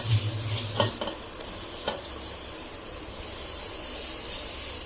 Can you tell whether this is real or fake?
real